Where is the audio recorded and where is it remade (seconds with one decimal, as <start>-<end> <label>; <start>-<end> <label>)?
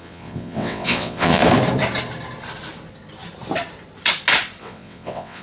0.0-1.4 remade; 1.4-4.6 recorded; 4.6-5.4 remade